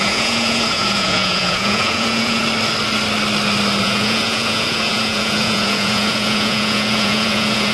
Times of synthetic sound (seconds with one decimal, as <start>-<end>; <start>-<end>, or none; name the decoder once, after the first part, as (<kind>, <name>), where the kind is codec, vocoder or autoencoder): 0.0-2.4 (vocoder, Vocos); 3.8-7.7